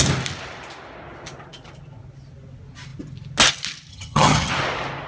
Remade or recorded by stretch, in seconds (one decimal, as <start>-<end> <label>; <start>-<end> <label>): 0.0-3.9 recorded; 3.9-4.5 remade; 4.5-5.1 recorded